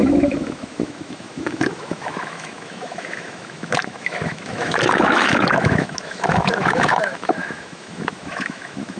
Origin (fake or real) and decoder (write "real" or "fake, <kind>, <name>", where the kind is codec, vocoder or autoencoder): fake, autoencoder, DAC-VAE